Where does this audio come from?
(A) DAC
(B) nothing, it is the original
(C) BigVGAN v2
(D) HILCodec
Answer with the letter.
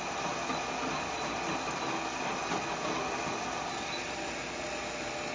B